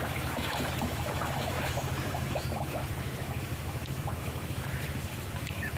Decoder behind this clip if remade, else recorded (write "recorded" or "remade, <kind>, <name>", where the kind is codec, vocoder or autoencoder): remade, autoencoder, DAC-VAE